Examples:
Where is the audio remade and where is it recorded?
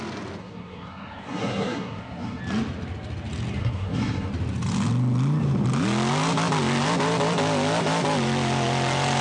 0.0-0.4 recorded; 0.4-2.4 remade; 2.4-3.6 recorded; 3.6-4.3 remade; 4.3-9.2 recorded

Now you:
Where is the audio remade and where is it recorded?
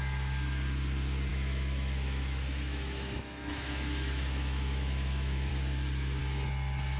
0.0-1.3 recorded; 1.3-5.5 remade; 5.5-7.0 recorded